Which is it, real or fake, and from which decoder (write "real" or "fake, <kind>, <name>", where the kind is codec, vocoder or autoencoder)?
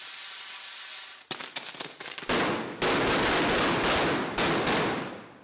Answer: real